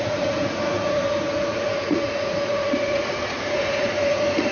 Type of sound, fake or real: fake